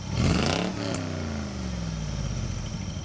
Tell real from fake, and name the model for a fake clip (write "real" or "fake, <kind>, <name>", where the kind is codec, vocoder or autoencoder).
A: real